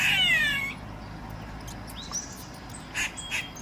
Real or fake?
real